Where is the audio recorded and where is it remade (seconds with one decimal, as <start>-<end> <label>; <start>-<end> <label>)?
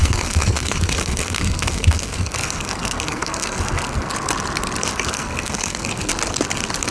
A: 0.0-4.1 remade; 4.1-4.9 recorded; 4.9-6.1 remade; 6.1-6.9 recorded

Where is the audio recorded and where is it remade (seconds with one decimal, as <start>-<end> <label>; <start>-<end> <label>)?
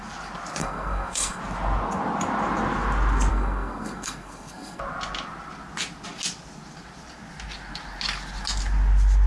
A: 0.0-0.6 recorded; 0.6-1.4 remade; 1.4-3.3 recorded; 3.3-4.8 remade; 4.8-9.3 recorded